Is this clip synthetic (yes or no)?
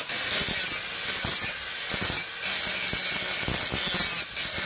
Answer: no